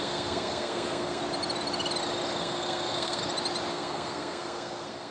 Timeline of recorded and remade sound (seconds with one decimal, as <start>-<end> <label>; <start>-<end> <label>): 0.0-1.2 remade; 1.2-2.4 recorded; 2.4-3.2 remade; 3.2-3.7 recorded; 3.7-5.1 remade